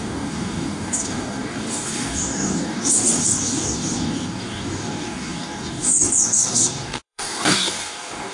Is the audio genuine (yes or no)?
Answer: no